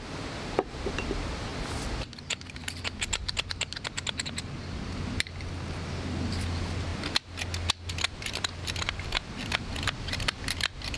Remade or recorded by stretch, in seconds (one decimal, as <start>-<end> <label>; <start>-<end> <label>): 0.0-1.5 remade; 1.5-6.3 recorded; 6.3-6.9 remade; 6.9-7.9 recorded; 7.9-11.0 remade